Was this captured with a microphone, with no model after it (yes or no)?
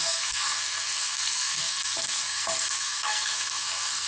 no